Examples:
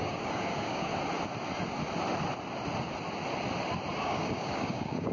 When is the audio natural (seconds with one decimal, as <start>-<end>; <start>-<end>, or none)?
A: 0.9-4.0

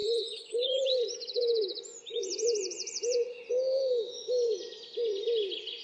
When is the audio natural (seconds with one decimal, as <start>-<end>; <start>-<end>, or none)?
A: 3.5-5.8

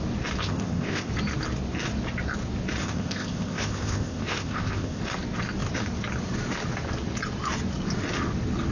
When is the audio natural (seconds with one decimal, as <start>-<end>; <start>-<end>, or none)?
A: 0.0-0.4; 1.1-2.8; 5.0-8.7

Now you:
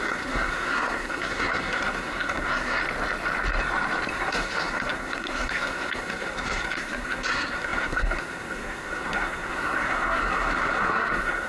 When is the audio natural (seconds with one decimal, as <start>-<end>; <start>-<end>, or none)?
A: 2.8-4.1